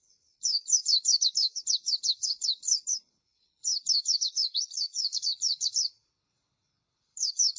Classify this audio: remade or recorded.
remade